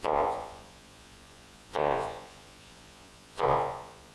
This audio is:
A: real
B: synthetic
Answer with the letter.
B